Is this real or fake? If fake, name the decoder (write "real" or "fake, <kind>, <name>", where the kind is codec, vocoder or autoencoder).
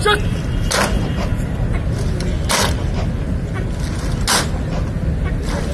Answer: real